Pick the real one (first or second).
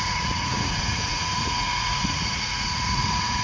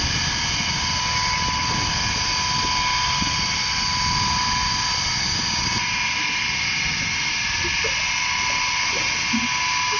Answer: second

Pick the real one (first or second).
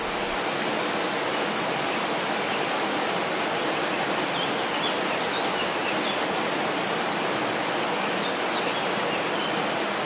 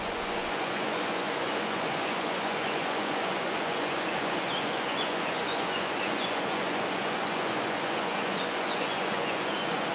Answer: first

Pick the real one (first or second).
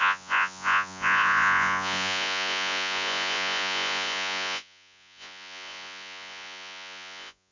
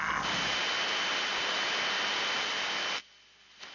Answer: second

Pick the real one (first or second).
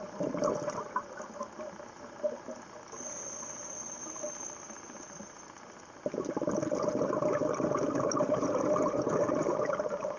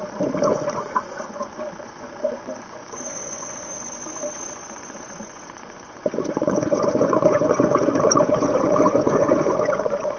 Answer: first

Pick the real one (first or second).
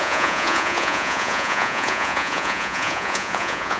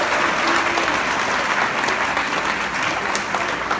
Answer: second